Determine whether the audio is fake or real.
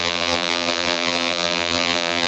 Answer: fake